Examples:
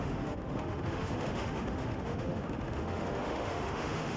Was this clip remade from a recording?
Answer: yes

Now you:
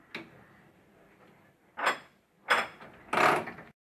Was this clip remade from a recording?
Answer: no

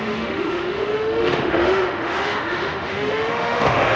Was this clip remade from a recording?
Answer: yes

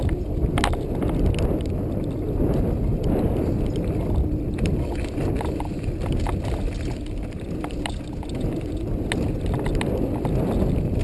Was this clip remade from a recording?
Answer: no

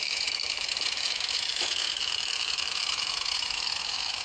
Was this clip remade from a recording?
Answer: yes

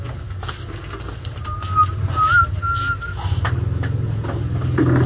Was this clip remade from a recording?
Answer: no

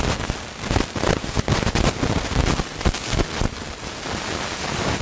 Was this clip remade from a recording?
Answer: no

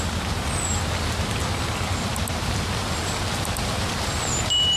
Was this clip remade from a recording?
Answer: no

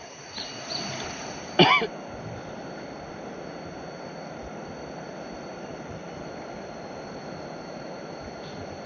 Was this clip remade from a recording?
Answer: no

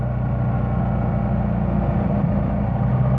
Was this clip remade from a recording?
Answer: no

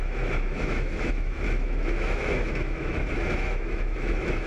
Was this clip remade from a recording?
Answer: yes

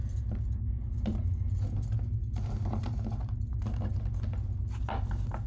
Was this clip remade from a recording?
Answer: no